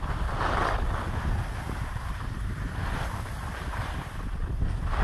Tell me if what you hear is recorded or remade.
recorded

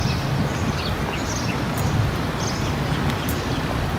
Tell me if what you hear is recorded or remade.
recorded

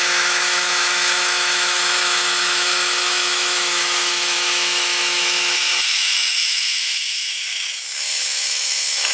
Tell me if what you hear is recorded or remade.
remade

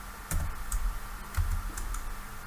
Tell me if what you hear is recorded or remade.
recorded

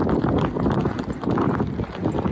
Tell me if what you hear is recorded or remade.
recorded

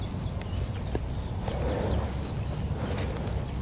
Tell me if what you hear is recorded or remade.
recorded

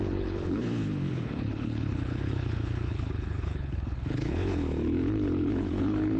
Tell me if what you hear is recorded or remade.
remade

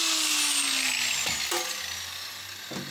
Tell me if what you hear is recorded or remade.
recorded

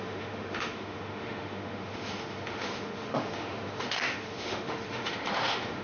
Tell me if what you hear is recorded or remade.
remade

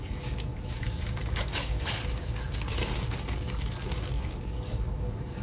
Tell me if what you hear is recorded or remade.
remade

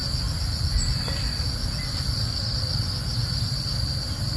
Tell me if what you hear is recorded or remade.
recorded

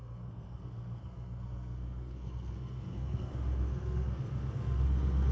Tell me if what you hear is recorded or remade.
remade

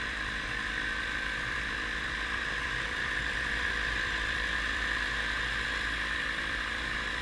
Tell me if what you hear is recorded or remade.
remade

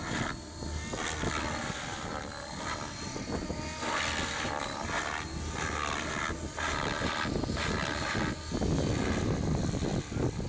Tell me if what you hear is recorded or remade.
recorded